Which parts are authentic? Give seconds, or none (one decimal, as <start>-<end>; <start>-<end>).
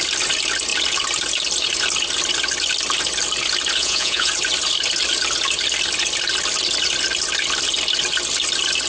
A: 0.0-3.8; 4.3-8.9